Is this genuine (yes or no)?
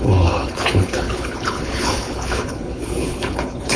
no